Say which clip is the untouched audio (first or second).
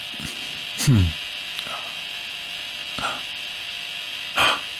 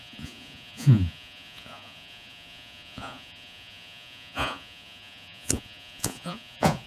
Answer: first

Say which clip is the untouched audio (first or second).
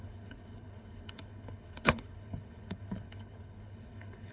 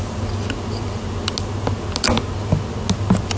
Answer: second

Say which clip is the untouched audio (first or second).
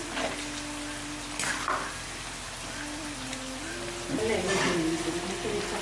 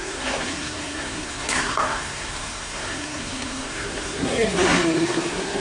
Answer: first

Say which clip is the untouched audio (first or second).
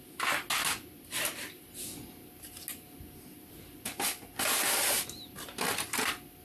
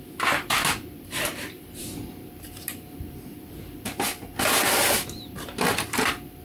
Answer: first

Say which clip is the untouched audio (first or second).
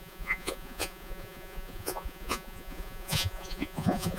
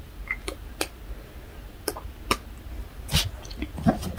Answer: second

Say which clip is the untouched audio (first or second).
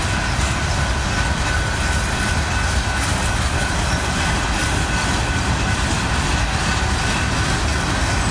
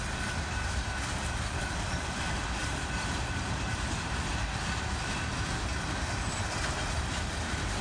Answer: first